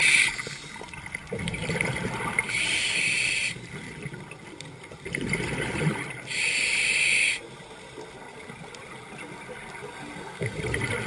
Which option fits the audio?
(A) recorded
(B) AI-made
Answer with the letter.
A